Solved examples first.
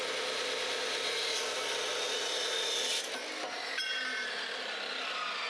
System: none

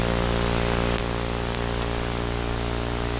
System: none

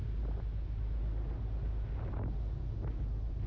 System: none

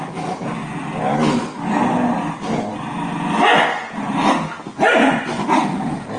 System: none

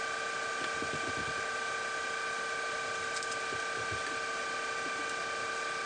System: none